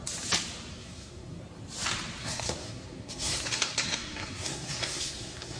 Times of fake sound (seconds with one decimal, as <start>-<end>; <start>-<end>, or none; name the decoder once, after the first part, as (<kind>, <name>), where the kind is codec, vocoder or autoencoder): 0.7-1.4 (codec, SNAC); 2.2-5.6